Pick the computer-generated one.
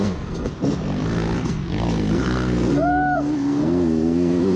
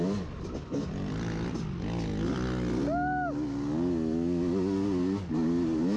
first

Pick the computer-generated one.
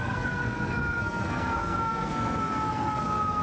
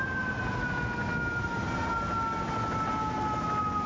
first